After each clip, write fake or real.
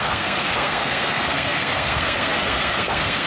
fake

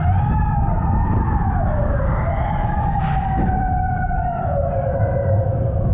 real